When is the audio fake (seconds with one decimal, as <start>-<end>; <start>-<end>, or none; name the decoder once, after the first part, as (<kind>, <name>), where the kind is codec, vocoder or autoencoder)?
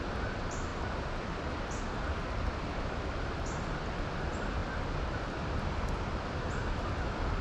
none